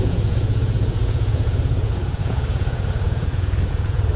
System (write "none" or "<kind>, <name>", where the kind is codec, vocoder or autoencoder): vocoder, Vocos